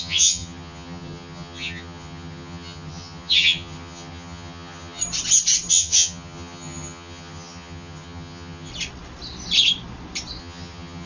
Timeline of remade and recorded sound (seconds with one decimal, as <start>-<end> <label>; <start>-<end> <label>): 0.0-5.0 remade; 5.0-5.7 recorded; 5.7-8.7 remade; 8.7-10.4 recorded; 10.4-11.1 remade